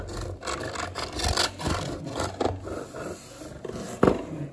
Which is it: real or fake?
real